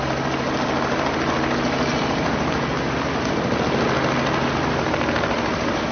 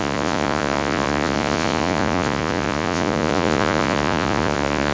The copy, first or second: second